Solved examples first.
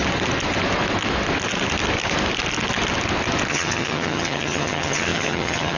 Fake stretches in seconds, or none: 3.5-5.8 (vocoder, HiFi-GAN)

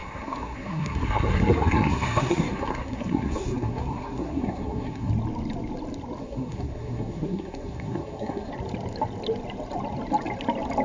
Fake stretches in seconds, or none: 0.0-5.1 (codec, SNAC); 6.2-8.5

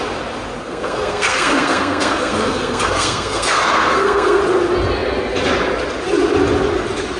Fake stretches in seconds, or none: 0.6-4.4 (codec, SNAC)

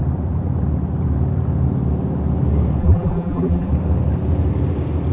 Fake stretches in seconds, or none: 2.8-3.7 (vocoder, BigVGAN v2)

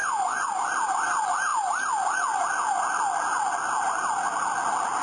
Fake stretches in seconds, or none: 0.0-0.5 (vocoder, Vocos)

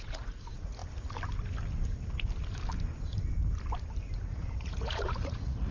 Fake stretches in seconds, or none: 0.0-0.8 (vocoder, Vocos); 4.2-5.7

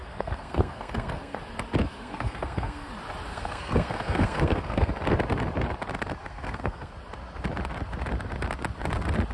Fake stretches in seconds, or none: 0.0-1.4 (codec, SNAC); 1.8-2.9; 3.3-4.9; 6.2-6.9